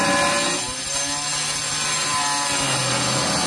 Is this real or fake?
real